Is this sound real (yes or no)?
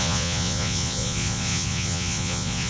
no